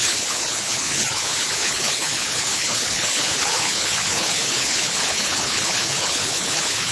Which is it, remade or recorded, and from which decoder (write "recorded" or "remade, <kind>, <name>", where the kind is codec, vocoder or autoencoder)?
remade, codec, HILCodec